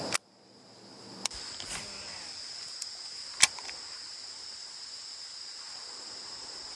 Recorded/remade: recorded